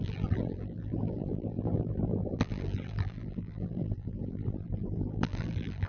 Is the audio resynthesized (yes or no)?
yes